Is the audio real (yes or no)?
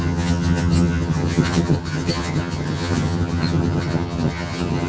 no